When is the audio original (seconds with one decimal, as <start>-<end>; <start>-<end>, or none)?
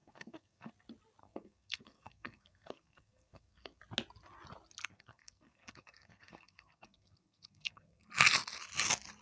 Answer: 0.7-1.2; 3.8-4.8; 8.1-9.2